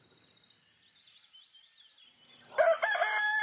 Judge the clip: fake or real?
real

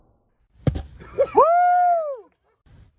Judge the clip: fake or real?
real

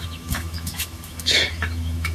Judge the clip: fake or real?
fake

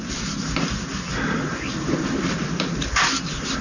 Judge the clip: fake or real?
real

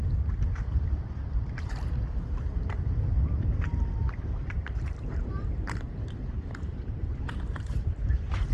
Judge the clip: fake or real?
fake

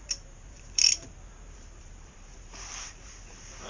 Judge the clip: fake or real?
fake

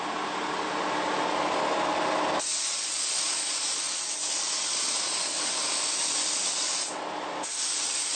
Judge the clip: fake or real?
real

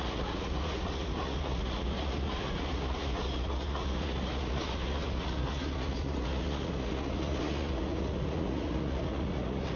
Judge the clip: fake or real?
fake